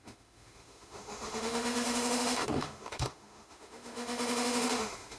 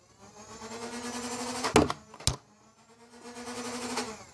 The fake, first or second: first